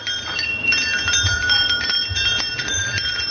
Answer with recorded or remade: recorded